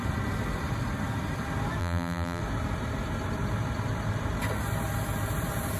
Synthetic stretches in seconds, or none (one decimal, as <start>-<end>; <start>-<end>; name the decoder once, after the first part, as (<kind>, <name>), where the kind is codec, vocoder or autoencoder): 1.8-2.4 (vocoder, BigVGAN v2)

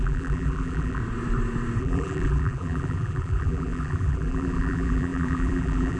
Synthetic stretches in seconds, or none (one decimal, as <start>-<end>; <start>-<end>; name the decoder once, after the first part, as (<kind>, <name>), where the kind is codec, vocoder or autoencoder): 0.0-1.0 (vocoder, BigVGAN v2); 1.8-6.0

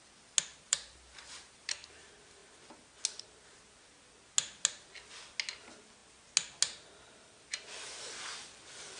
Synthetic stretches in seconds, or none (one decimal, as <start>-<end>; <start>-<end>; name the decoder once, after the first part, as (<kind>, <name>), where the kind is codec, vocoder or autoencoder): 0.5-1.9 (vocoder, BigVGAN v2)

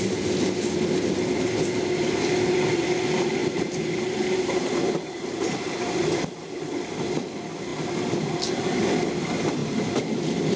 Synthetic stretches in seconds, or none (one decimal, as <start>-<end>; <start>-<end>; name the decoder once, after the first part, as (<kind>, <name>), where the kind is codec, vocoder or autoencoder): 3.4-5.9 (vocoder, BigVGAN v2)

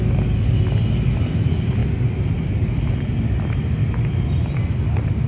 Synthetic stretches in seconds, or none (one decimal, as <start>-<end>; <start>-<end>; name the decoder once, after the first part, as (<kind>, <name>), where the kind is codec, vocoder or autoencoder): none

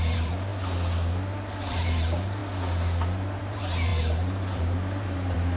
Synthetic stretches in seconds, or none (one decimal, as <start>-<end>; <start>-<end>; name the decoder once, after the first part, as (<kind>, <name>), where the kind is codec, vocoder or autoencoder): 0.0-0.5 (vocoder, BigVGAN v2); 1.7-2.4; 3.4-5.6